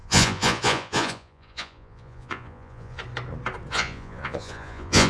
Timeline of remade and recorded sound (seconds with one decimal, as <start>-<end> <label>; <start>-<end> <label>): 0.0-3.0 remade; 3.0-3.7 recorded; 3.7-5.1 remade